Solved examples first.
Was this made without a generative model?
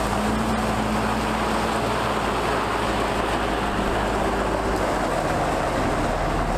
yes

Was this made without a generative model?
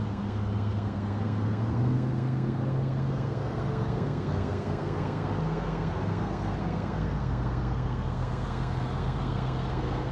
no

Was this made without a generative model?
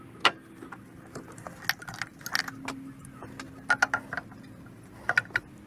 yes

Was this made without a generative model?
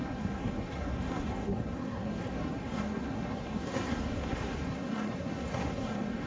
no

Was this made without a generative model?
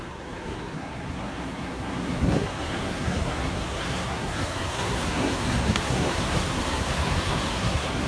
no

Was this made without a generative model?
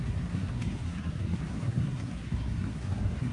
no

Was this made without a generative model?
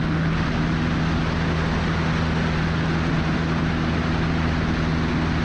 yes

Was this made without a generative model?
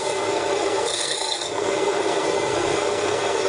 no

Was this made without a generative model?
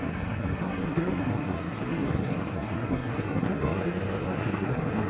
no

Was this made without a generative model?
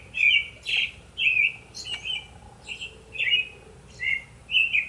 yes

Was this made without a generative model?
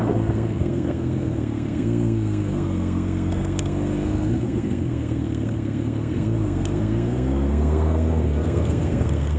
no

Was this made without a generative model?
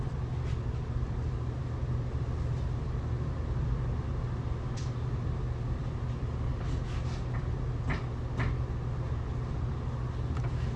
yes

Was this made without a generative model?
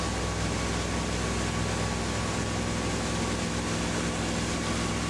yes